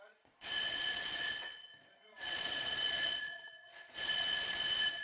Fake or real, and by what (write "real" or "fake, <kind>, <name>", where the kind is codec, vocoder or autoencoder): fake, vocoder, Vocos